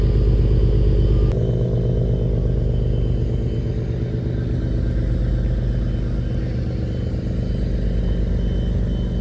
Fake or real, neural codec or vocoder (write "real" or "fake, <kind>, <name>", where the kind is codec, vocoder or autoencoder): real